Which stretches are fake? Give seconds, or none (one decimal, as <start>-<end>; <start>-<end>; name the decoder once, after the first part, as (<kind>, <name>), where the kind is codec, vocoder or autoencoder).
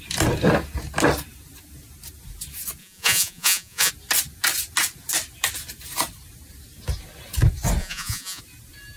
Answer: 2.8-3.9 (vocoder, Vocos); 7.8-8.4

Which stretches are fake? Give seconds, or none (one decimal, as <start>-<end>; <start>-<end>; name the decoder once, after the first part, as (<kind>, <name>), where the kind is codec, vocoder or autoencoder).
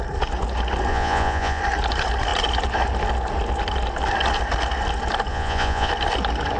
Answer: 0.9-1.6 (vocoder, Vocos); 5.3-5.9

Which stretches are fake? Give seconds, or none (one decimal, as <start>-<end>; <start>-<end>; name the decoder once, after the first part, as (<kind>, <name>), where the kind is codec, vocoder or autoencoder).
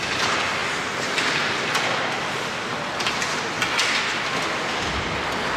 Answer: none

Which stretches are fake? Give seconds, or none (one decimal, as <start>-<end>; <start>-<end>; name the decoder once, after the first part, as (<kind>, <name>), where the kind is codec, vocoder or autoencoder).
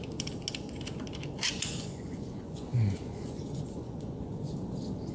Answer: 1.5-4.5 (vocoder, Vocos)